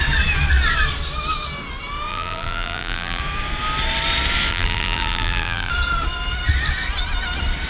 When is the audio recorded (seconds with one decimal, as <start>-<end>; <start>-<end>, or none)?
0.0-2.1; 3.2-4.5; 5.7-7.7